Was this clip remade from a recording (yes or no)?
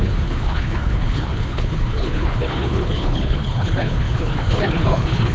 yes